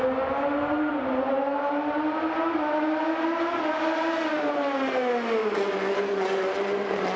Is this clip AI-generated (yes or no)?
no